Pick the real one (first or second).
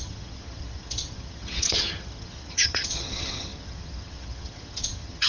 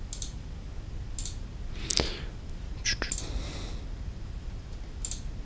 second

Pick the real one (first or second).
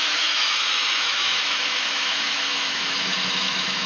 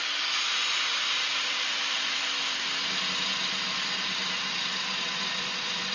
second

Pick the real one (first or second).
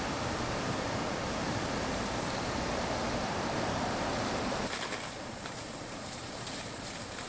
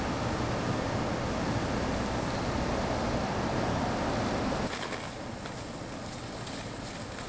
second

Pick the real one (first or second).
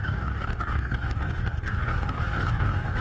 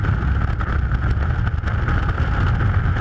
second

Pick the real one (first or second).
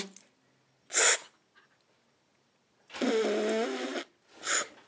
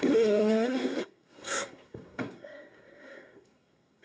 first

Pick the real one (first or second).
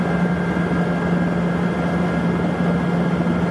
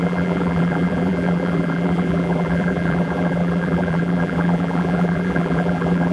first